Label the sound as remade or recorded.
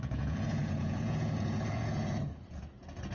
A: remade